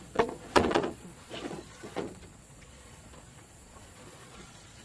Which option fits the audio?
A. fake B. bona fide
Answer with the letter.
A